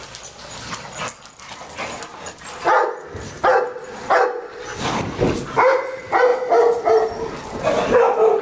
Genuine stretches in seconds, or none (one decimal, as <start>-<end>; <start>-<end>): 0.0-8.4